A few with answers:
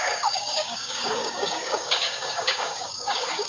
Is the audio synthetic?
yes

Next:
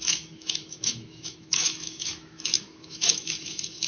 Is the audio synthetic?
yes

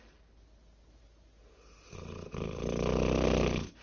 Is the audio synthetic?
no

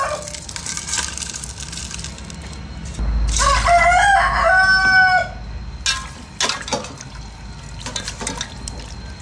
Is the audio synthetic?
no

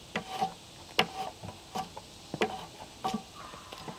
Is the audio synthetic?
no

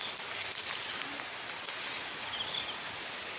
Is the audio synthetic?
no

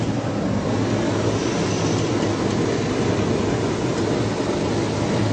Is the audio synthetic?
no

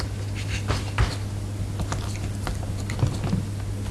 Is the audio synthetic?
no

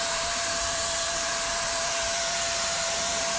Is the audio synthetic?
yes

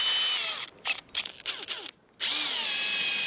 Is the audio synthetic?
no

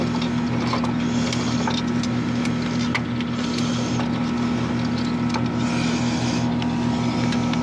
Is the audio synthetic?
no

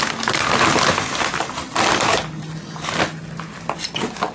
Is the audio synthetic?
no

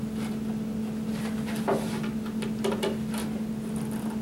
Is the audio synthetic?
no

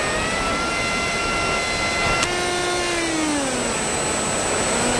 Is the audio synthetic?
no